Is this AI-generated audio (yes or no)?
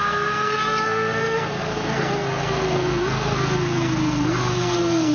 yes